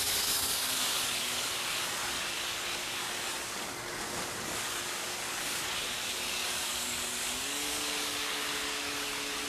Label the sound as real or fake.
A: fake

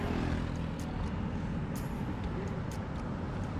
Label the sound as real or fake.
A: real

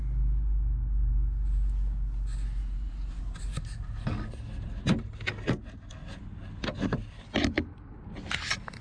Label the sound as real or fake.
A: real